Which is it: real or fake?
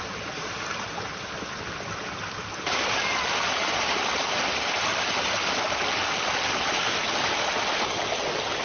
real